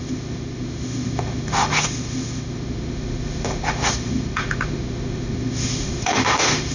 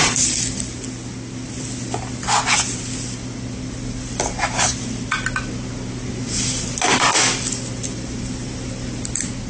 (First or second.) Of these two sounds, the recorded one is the second